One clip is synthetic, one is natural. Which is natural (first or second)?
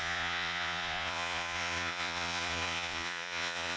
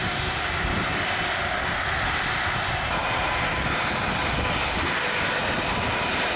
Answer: second